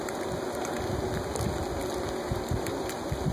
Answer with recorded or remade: recorded